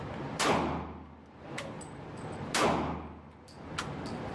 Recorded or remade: recorded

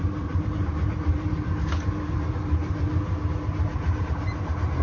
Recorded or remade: recorded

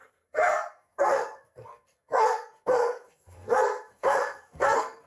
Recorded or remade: remade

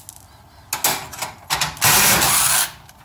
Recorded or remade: recorded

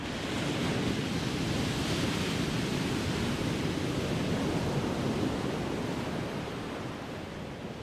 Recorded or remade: recorded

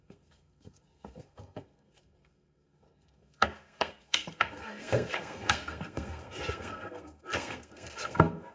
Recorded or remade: remade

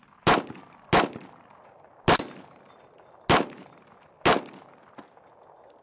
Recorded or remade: recorded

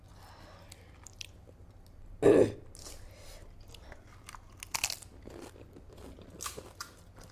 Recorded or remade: recorded